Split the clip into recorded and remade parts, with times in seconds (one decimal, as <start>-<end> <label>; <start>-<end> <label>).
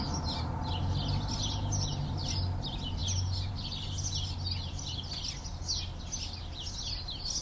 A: 0.0-7.4 recorded